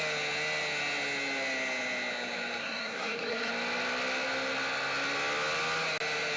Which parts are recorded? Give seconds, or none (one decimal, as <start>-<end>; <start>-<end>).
0.0-2.6; 3.5-6.4